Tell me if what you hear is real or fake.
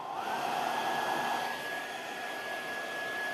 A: real